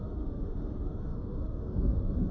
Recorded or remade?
remade